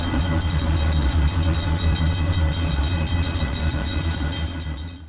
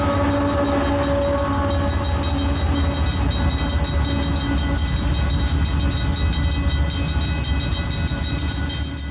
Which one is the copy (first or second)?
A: first